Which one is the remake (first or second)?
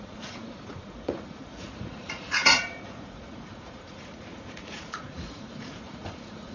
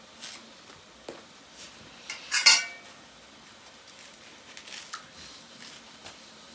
first